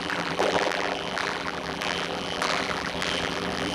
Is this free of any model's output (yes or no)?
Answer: no